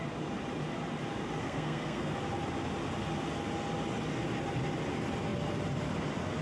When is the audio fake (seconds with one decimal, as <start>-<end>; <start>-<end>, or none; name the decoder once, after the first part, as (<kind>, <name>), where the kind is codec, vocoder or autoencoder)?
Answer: 1.4-2.1 (codec, SNAC)